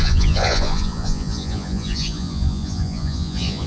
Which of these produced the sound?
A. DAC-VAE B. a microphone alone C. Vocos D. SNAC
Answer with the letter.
C